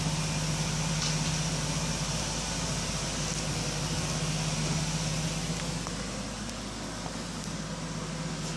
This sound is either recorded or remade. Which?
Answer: recorded